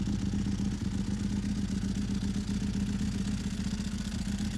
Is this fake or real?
real